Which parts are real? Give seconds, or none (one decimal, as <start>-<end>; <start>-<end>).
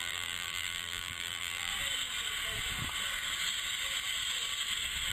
1.7-5.1